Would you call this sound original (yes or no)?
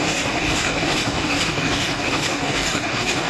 no